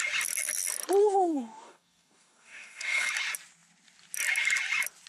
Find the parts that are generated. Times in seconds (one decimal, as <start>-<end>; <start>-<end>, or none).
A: 1.0-3.1

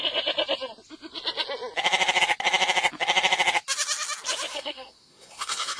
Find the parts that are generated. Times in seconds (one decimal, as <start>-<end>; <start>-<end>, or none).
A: 4.5-5.8

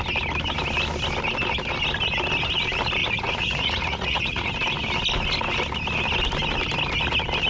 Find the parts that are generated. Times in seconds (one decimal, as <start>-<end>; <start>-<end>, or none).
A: 3.0-4.5